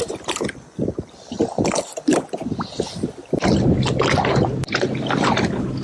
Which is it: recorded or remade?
recorded